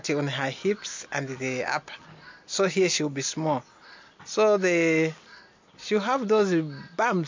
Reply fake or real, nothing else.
real